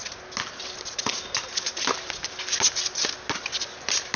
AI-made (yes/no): no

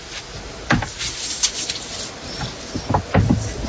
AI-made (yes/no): no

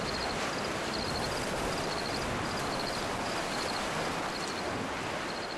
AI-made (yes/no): no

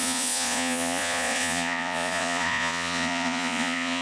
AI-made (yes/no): yes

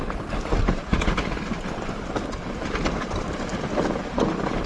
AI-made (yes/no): no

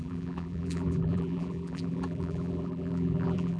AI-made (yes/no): yes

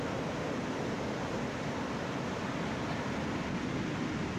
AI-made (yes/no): no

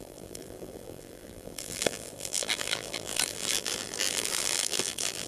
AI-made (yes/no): yes